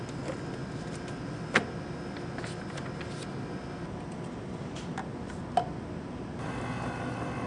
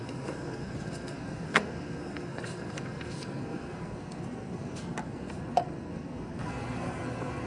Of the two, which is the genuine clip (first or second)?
first